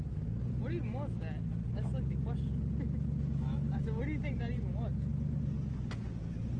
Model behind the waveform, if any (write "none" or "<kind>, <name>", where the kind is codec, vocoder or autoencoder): none